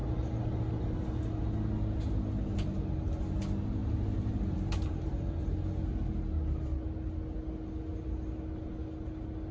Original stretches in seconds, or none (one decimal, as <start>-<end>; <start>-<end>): 0.0-3.8; 5.6-9.5